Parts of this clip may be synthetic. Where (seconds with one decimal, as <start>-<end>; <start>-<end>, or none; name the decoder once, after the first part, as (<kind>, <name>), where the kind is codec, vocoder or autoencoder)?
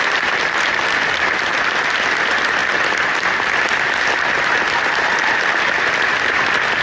none